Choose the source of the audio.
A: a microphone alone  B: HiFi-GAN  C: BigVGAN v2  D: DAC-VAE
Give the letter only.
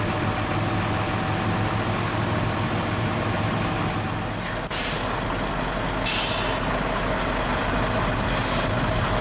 A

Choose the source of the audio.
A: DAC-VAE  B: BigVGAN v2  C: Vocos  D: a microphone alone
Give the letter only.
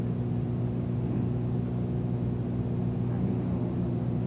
D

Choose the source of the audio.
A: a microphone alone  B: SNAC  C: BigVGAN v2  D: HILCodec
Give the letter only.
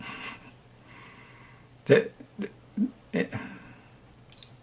A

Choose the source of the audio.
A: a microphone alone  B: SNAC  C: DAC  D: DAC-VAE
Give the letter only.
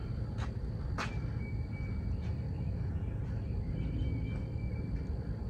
A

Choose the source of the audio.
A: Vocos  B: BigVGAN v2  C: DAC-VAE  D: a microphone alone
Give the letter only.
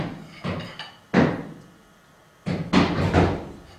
D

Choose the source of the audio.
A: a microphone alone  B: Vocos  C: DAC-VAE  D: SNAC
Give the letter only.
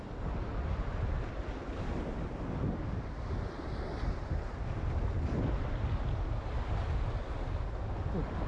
A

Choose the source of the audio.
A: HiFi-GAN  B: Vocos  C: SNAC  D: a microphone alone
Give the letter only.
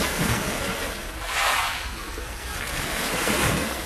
C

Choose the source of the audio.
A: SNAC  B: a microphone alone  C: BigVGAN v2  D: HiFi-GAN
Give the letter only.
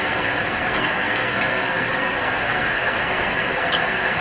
A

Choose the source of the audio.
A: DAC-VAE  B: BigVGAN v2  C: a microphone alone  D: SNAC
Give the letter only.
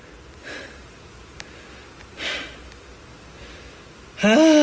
C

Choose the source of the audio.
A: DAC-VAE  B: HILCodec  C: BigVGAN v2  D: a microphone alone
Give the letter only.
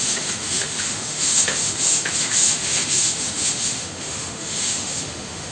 A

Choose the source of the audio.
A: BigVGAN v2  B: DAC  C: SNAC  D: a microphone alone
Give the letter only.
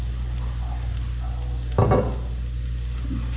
D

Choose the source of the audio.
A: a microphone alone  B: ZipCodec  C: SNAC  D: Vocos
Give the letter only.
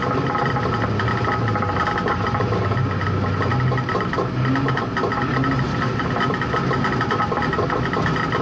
A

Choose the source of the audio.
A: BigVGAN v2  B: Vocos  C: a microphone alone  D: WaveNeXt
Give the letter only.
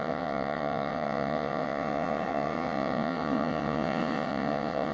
D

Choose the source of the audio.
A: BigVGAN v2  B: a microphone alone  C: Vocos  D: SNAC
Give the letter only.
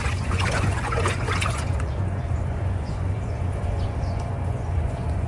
C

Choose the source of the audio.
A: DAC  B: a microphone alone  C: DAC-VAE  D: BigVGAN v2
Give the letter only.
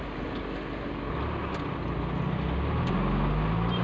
B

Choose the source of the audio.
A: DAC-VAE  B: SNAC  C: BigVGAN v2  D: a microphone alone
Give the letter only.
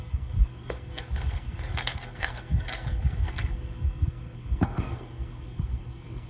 B